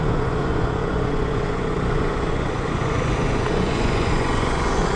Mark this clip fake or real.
fake